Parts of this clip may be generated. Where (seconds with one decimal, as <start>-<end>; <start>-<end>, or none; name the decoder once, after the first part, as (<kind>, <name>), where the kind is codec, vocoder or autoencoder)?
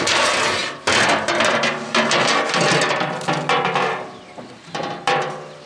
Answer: none